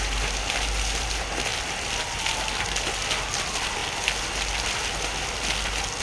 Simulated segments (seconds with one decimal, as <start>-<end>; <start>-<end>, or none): none